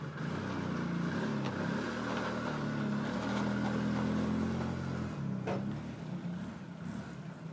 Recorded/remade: recorded